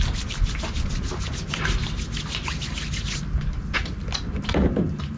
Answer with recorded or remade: recorded